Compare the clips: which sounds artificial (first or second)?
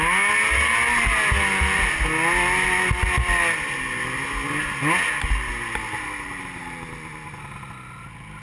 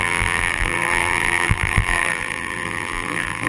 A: second